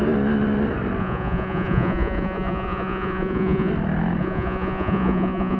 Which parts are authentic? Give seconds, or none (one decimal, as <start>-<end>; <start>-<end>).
0.0-1.0; 3.7-4.2